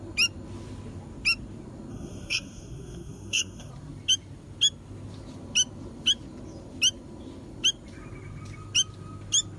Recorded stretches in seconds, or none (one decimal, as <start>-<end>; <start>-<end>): 0.0-1.9; 3.7-9.6